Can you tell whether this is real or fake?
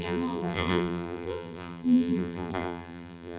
fake